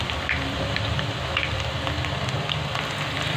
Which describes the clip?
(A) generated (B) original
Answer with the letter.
A